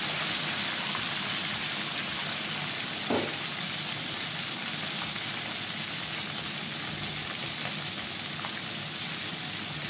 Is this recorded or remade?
recorded